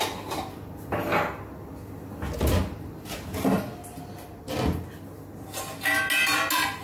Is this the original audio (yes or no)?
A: yes